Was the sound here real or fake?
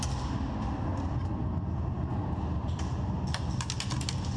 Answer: real